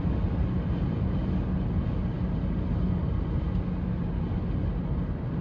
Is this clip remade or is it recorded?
recorded